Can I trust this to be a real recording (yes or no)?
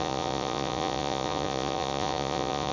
no